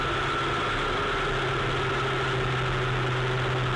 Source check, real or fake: real